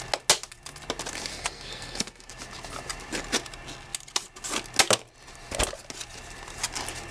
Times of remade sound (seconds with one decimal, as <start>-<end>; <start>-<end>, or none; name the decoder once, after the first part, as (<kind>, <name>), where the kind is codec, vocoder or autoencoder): 1.3-2.3 (codec, SNAC)